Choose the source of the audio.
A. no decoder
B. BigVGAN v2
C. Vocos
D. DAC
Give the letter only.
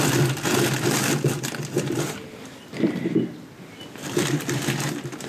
A